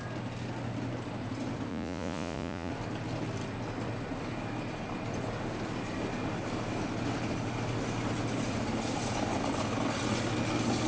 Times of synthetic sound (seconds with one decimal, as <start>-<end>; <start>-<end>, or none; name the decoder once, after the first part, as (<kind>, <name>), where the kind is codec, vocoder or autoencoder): 1.7-2.7 (vocoder, Vocos)